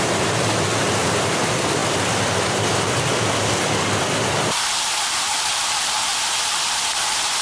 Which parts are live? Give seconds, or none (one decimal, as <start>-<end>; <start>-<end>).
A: 1.8-4.4; 6.1-7.4